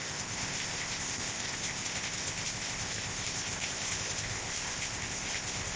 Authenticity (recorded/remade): remade